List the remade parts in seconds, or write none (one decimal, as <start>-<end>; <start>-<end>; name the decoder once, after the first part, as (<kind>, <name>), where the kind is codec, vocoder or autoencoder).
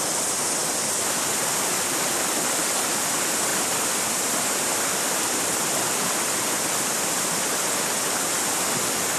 0.6-1.3 (vocoder, BigVGAN v2); 3.5-8.2